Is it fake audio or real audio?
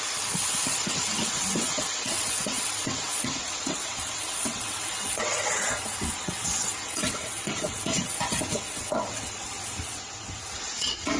fake